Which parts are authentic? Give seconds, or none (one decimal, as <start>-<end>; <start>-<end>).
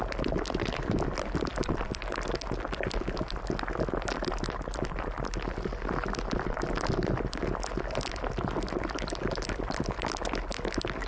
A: 0.0-1.5; 2.0-11.1